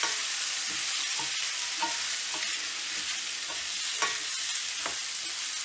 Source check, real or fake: real